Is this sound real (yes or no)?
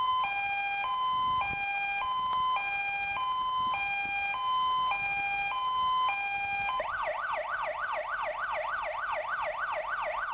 yes